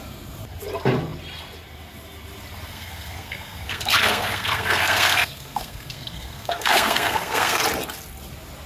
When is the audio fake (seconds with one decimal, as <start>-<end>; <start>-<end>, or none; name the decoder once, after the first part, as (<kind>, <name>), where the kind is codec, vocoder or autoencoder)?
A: 2.7-7.6 (codec, SNAC)